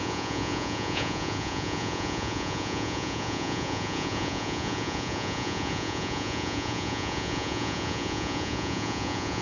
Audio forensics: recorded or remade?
remade